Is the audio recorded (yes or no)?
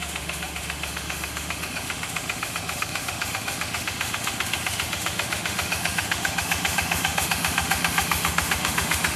no